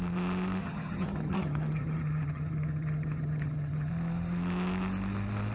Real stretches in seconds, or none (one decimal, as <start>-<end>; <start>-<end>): 0.0-0.6; 3.9-5.5